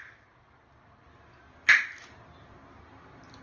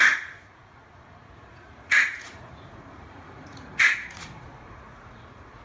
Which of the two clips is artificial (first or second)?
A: second